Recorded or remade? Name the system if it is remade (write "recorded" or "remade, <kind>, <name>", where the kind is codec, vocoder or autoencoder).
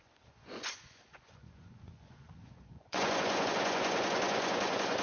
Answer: remade, vocoder, Vocos